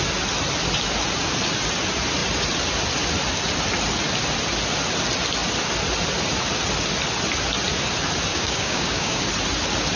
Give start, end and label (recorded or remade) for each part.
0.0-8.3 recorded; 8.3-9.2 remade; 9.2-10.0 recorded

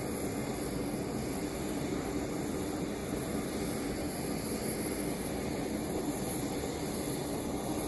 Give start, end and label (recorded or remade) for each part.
0.0-7.9 recorded

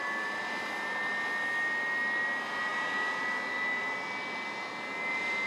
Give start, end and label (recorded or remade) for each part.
0.0-5.5 recorded

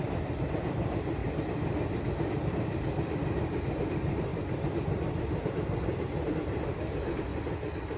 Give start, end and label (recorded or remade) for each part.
0.0-1.2 remade; 1.2-2.5 recorded; 2.5-4.3 remade; 4.3-6.3 recorded; 6.3-7.3 remade; 7.3-8.0 recorded

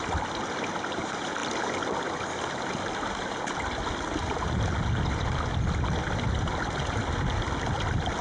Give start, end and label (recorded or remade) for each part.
0.0-8.2 recorded